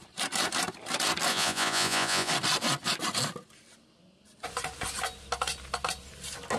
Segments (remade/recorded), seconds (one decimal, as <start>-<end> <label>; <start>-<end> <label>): 0.0-1.3 recorded; 1.3-2.3 remade; 2.3-6.6 recorded